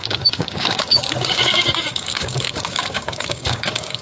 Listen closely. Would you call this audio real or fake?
fake